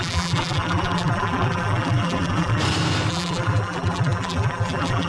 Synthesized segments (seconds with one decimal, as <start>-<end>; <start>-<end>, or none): 0.0-2.6; 3.1-5.1